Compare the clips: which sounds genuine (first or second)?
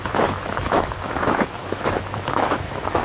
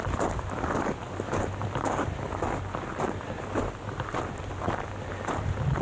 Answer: second